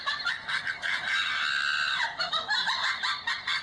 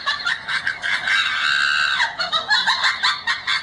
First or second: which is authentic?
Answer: second